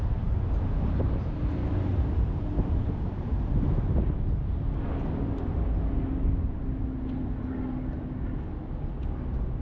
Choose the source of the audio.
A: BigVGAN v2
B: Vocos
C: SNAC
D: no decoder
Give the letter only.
D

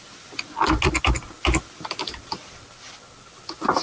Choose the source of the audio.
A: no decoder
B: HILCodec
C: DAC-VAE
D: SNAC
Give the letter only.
A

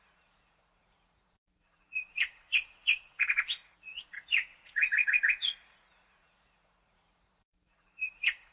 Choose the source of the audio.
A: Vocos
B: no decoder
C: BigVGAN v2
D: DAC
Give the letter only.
A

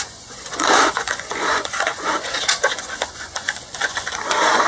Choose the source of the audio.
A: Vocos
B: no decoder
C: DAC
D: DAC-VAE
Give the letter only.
A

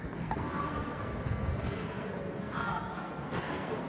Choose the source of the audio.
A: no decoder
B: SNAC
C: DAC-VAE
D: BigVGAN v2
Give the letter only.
B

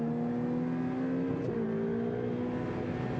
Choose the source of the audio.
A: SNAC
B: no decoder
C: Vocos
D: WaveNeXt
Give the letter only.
B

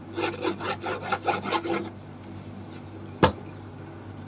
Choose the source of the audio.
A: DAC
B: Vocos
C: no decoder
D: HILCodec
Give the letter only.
C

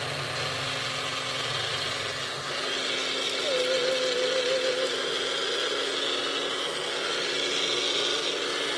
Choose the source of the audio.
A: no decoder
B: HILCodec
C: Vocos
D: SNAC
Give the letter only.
A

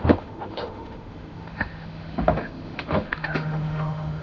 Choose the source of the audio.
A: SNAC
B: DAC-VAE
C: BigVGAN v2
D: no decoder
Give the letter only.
B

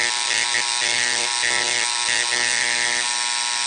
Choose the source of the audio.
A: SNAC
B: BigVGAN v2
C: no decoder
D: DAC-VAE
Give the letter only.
C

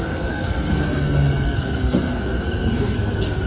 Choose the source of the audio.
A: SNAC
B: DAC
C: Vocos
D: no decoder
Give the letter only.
A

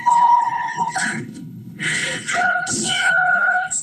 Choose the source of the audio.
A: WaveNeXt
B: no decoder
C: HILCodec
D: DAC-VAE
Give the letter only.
C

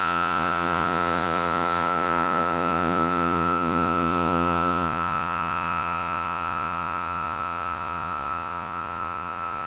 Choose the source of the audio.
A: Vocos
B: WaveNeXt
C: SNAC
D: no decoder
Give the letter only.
A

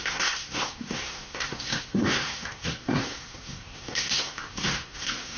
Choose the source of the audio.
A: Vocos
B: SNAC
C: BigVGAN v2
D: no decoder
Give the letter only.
B